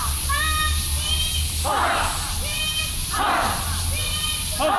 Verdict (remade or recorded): recorded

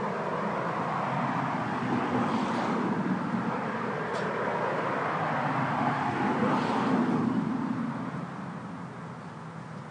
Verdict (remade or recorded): recorded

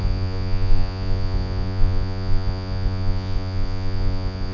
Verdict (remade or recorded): remade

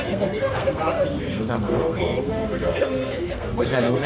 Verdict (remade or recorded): remade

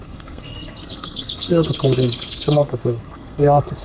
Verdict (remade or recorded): remade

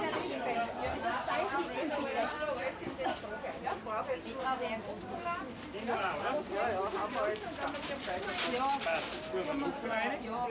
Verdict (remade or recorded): recorded